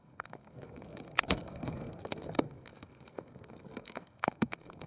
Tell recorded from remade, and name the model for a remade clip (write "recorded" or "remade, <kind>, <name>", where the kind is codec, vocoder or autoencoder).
remade, codec, SNAC